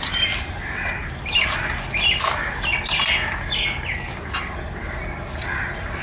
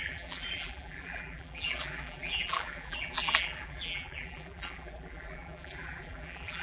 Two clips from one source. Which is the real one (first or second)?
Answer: first